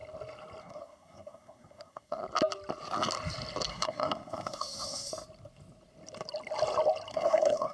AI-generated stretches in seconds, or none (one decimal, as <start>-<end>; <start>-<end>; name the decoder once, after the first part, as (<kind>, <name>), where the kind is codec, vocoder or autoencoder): 0.6-2.2 (codec, SNAC); 3.7-5.1; 7.1-7.7